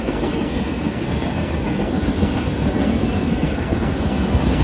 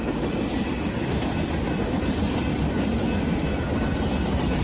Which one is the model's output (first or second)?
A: first